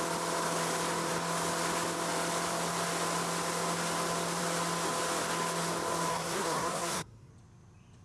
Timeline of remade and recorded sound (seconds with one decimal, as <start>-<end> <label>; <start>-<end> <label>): 0.0-6.1 recorded; 6.1-7.3 remade; 7.3-8.0 recorded